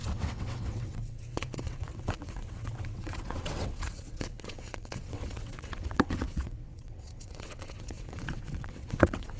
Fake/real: fake